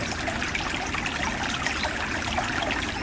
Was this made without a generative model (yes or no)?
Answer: yes